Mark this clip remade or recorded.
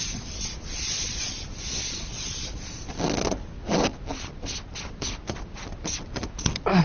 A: recorded